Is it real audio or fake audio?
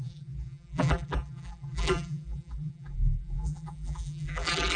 fake